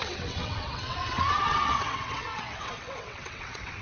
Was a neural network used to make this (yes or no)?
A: yes